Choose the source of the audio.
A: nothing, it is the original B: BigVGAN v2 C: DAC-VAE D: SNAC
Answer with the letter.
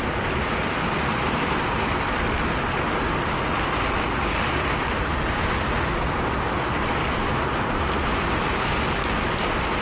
A